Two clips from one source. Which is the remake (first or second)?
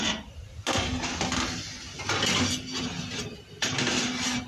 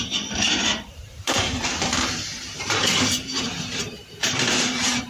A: second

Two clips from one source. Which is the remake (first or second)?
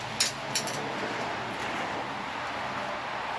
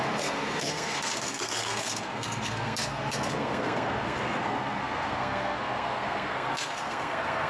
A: second